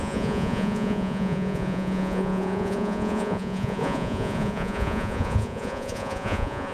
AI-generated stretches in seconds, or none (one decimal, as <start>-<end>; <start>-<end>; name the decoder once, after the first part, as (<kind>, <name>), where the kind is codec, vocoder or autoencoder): 0.0-6.7 (vocoder, Vocos)